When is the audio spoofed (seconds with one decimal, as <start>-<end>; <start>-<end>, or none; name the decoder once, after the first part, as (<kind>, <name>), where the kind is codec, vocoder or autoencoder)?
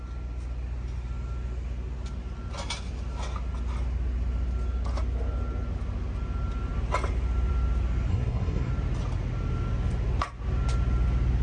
8.1-8.7 (codec, SNAC)